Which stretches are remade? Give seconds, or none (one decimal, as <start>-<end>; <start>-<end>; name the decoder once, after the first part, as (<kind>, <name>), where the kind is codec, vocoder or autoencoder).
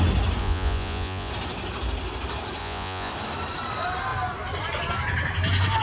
0.4-1.3 (vocoder, Vocos); 2.6-3.1